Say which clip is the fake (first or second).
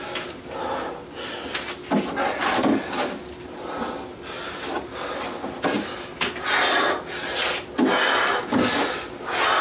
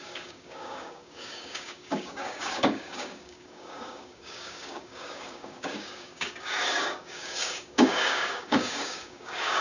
second